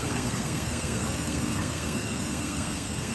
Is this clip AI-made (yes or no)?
yes